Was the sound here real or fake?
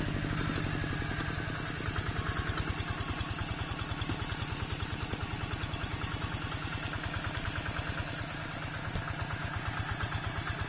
real